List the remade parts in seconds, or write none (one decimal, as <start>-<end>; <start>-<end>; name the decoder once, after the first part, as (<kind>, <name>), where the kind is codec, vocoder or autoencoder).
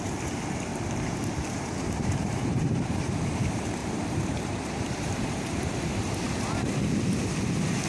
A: 0.7-3.0 (vocoder, BigVGAN v2); 3.8-5.7